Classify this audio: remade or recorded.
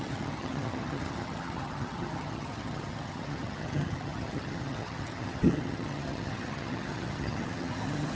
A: remade